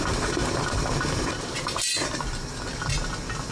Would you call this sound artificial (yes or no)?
no